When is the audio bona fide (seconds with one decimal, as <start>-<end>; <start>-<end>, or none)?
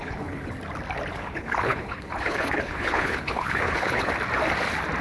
0.5-1.1; 4.1-5.0